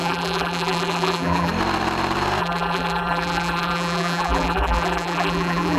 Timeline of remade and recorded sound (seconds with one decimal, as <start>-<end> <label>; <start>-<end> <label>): 0.0-1.5 remade; 1.5-2.4 recorded; 2.4-5.8 remade

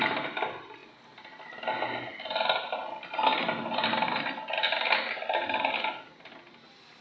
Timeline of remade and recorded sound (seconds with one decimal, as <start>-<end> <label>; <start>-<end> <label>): 0.0-7.0 recorded

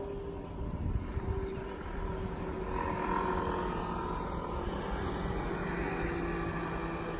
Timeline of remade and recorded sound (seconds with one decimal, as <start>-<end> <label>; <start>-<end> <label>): 0.0-1.1 recorded; 1.1-3.6 remade; 3.6-7.2 recorded

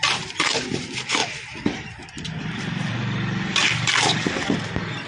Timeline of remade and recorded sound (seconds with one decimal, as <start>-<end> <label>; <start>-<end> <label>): 0.0-1.2 recorded; 1.2-4.3 remade; 4.3-5.1 recorded

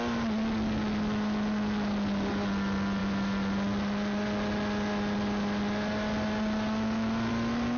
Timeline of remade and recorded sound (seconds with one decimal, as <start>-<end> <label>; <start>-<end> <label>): 0.0-7.8 recorded

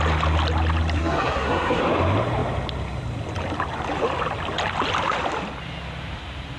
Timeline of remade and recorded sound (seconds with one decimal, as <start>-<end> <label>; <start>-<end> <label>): 0.0-1.0 recorded; 1.0-1.8 remade; 1.8-6.6 recorded